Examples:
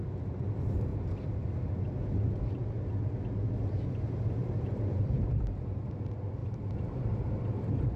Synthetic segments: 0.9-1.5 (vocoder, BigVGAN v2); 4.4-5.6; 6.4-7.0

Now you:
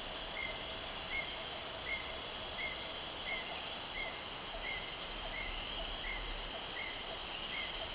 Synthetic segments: none

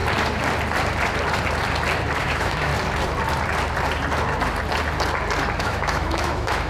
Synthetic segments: 2.2-2.7 (autoencoder, DAC-VAE); 5.6-6.7

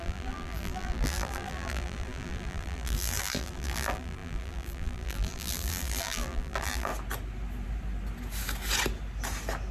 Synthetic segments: 0.0-6.9 (vocoder, BigVGAN v2)

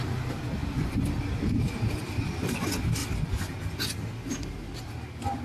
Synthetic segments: none

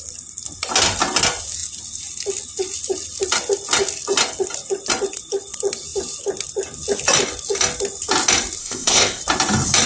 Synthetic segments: 8.6-9.2 (codec, ZipCodec)